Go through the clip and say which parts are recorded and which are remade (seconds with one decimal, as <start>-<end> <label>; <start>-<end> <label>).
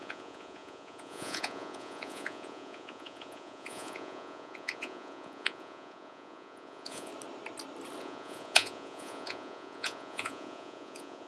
0.0-7.1 remade; 7.1-8.0 recorded; 8.0-11.3 remade